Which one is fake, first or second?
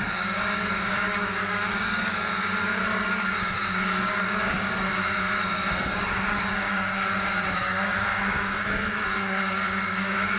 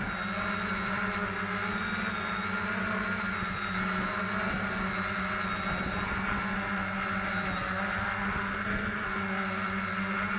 first